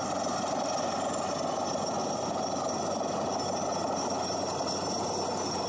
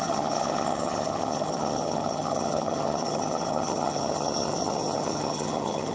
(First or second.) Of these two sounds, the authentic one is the first